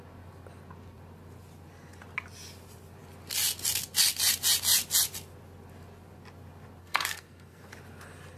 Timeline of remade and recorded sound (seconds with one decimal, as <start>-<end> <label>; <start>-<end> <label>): 0.0-6.8 recorded; 6.8-7.7 remade; 7.7-8.4 recorded